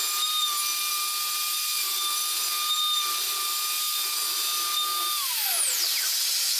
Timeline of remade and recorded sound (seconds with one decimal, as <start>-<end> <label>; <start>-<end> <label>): 0.0-6.6 recorded